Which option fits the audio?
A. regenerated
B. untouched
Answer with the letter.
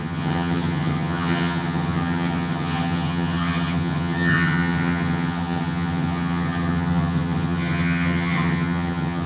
A